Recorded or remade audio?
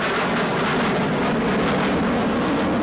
recorded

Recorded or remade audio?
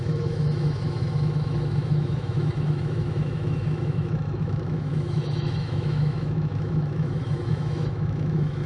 remade